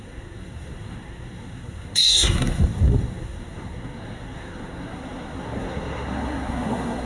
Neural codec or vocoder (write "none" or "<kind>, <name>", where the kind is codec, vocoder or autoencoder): codec, SNAC